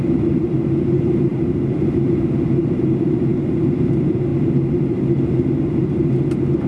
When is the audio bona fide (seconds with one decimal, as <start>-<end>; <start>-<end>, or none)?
0.0-6.7

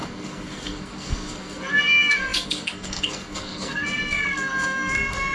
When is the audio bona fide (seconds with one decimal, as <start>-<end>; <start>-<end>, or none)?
none

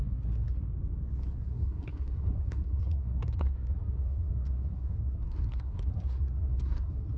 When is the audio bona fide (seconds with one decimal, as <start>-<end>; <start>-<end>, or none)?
0.7-1.4

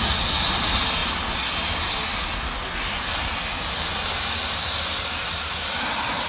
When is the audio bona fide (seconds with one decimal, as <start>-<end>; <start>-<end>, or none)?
0.0-6.3